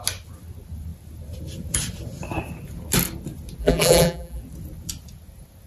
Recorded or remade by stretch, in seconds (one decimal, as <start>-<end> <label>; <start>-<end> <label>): 0.0-3.6 recorded; 3.6-4.4 remade; 4.4-5.7 recorded